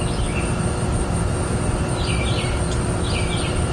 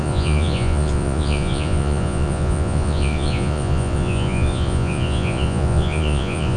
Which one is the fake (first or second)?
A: second